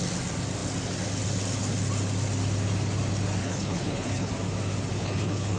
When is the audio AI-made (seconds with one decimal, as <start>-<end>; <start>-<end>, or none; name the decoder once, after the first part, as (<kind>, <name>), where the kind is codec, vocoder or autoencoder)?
3.4-4.3 (codec, HILCodec); 4.9-5.6